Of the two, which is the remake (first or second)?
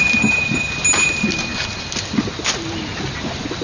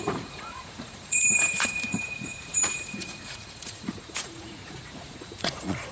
second